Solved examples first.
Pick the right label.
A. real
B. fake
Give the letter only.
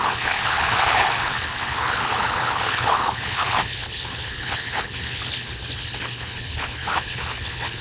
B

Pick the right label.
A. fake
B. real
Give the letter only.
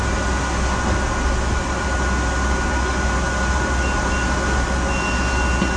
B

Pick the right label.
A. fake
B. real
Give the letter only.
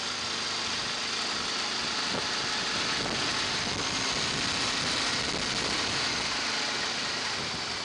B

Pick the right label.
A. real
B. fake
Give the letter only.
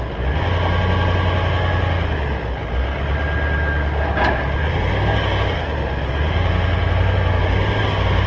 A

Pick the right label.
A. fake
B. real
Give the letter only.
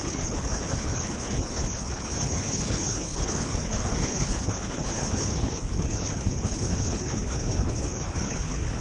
A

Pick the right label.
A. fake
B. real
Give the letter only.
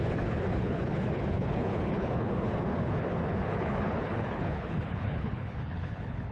A